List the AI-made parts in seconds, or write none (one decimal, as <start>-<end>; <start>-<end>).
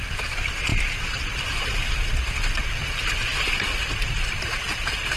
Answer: none